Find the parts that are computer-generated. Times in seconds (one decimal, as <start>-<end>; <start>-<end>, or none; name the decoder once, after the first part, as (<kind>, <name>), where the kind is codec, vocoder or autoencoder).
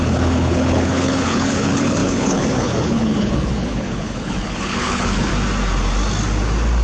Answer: 0.0-5.3 (codec, HILCodec)